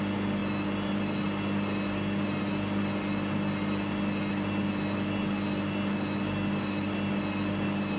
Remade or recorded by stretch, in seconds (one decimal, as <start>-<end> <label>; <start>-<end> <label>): 0.0-8.0 recorded

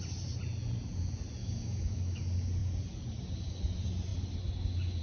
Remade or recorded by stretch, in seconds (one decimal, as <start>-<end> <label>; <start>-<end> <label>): 0.0-1.4 recorded; 1.4-2.2 remade; 2.2-5.0 recorded

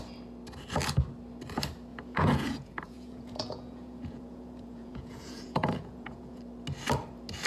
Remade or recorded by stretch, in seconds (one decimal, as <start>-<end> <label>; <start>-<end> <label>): 0.0-1.9 recorded; 1.9-6.4 remade; 6.4-7.5 recorded

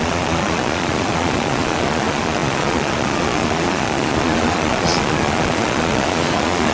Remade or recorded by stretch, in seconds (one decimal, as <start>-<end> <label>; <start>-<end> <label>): 0.0-6.7 remade

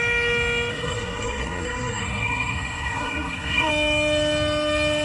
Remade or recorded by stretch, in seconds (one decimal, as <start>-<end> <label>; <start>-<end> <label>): 0.0-0.7 recorded; 0.7-3.7 remade; 3.7-5.0 recorded